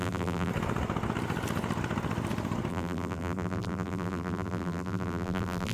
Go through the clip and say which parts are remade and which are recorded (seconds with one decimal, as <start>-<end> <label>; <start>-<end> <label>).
0.0-0.5 remade; 0.5-2.7 recorded; 2.7-5.7 remade